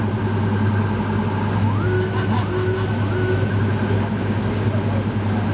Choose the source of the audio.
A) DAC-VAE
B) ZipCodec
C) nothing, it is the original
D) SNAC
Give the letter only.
C